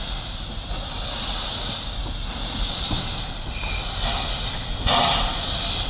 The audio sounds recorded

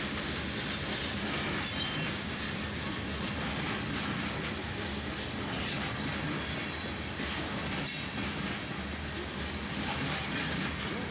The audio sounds recorded